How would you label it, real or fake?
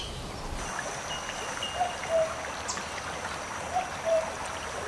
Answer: real